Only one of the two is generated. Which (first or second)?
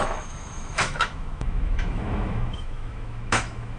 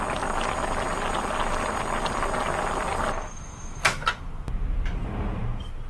first